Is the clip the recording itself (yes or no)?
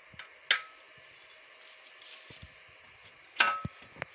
yes